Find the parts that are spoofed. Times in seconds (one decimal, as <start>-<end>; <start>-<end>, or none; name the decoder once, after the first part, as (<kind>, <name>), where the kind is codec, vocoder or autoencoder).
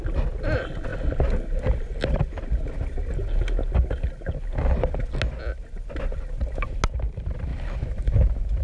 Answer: none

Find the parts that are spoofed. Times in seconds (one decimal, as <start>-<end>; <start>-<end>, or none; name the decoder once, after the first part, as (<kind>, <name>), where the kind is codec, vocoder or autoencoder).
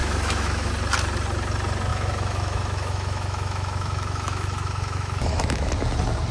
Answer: 0.0-0.7 (autoencoder, DAC-VAE); 1.9-5.7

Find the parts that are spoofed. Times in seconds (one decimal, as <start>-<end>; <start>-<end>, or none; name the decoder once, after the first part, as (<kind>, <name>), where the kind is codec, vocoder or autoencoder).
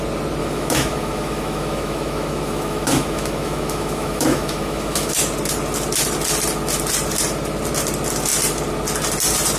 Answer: 0.4-5.1 (autoencoder, DAC-VAE)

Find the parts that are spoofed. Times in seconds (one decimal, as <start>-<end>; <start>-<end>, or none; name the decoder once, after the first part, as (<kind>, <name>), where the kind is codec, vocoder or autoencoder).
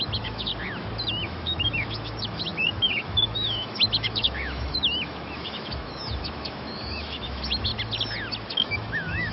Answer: 0.0-0.5 (autoencoder, DAC-VAE); 1.1-7.7; 8.5-9.3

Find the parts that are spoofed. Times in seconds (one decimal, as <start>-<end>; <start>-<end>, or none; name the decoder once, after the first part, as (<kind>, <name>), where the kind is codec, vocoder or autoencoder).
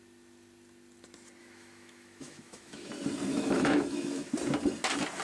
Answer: 1.4-2.9 (autoencoder, DAC-VAE); 3.3-4.3